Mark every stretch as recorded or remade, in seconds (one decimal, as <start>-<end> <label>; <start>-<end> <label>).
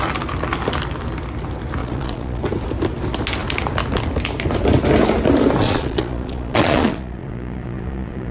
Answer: 0.0-1.8 recorded; 1.8-2.4 remade; 2.4-5.6 recorded; 5.6-8.3 remade